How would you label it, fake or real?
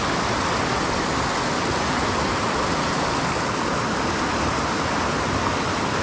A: real